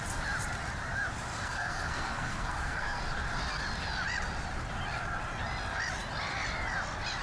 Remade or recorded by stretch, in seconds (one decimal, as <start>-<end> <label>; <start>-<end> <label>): 0.0-1.3 recorded; 1.3-3.0 remade; 3.0-7.2 recorded

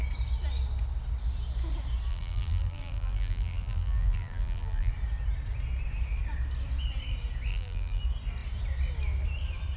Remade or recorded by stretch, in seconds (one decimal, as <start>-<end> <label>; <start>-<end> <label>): 0.0-2.1 recorded; 2.1-4.9 remade; 4.9-7.5 recorded; 7.5-8.0 remade; 8.0-9.8 recorded

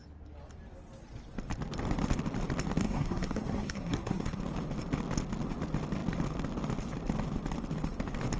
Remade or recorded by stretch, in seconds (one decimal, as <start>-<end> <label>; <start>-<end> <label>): 0.0-2.8 recorded; 2.8-4.4 remade; 4.4-8.4 recorded

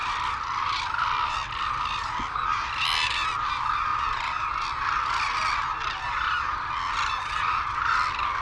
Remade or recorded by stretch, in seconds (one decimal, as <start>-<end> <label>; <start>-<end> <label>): 0.0-8.4 recorded

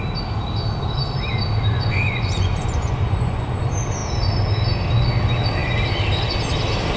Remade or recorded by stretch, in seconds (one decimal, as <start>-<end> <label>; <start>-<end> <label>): 0.0-1.7 recorded; 1.7-3.6 remade; 3.6-7.0 recorded

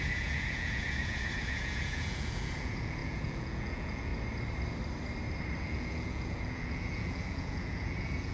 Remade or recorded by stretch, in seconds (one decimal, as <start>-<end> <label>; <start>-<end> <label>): 0.0-4.1 remade; 4.1-5.6 recorded; 5.6-8.3 remade

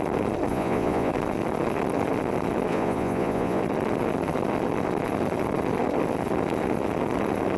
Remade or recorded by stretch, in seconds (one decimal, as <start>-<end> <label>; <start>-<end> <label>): 0.0-0.5 recorded; 0.5-1.1 remade; 1.1-2.7 recorded; 2.7-3.6 remade; 3.6-7.6 recorded